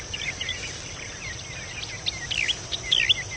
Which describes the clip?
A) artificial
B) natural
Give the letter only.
B